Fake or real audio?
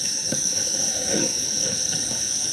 fake